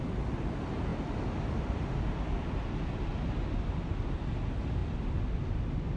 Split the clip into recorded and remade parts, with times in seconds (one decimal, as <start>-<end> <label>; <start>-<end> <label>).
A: 0.0-6.0 recorded